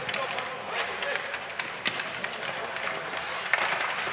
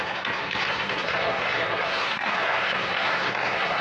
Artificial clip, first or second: second